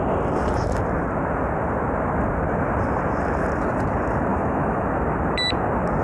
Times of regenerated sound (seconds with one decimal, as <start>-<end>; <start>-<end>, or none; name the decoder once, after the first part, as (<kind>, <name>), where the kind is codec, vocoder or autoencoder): 4.3-4.9 (autoencoder, DAC-VAE)